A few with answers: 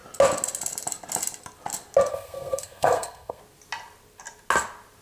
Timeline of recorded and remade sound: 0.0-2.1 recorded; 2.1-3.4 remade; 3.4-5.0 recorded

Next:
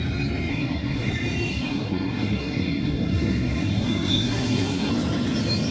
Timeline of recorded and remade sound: 0.0-0.5 recorded; 0.5-1.1 remade; 1.1-1.5 recorded; 1.5-4.9 remade; 4.9-5.7 recorded

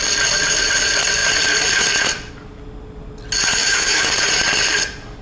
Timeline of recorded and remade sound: 0.0-3.6 recorded; 3.6-4.1 remade; 4.1-5.2 recorded

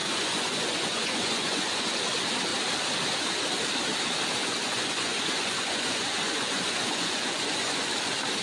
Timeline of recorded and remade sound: 0.0-2.0 remade; 2.0-4.4 recorded; 4.4-7.9 remade; 7.9-8.4 recorded

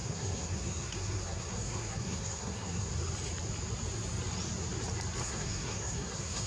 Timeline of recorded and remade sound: 0.0-2.9 remade; 2.9-5.2 recorded; 5.2-6.5 remade

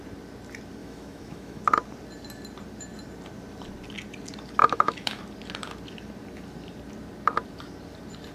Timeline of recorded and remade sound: 0.0-0.8 recorded; 0.8-1.6 remade; 1.6-4.6 recorded; 4.6-5.2 remade; 5.2-8.3 recorded

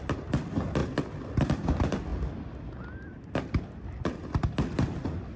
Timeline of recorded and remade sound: 0.0-0.8 recorded; 0.8-1.4 remade; 1.4-5.4 recorded